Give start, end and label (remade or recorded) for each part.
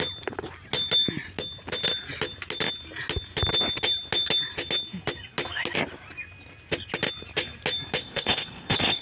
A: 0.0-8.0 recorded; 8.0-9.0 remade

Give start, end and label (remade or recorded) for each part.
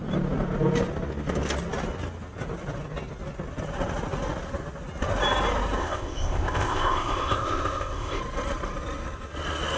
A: 0.0-5.8 recorded; 5.8-8.2 remade; 8.2-9.8 recorded